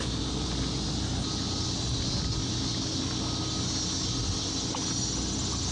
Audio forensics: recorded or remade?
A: recorded